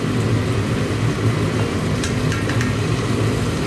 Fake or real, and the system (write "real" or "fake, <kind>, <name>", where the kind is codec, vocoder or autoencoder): real